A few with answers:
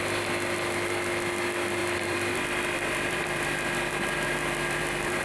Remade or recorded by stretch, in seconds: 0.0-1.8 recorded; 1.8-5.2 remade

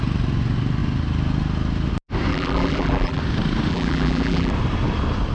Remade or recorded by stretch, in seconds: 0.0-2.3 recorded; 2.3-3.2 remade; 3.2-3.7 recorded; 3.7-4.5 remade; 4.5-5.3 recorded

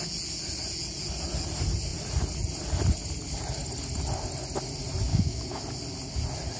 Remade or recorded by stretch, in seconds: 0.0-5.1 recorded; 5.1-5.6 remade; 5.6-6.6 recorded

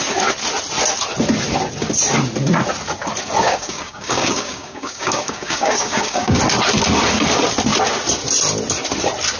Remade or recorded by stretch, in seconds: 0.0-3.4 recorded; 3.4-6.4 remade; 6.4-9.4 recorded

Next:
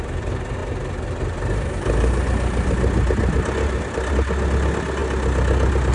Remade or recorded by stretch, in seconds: 0.0-5.9 recorded

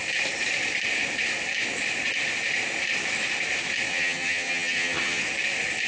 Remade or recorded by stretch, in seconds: 0.0-3.9 recorded; 3.9-5.2 remade; 5.2-5.9 recorded